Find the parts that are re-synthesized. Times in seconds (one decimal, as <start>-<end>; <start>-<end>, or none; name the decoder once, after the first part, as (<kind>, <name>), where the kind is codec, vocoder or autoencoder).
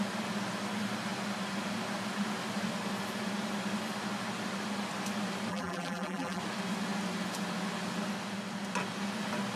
5.5-6.4 (vocoder, BigVGAN v2)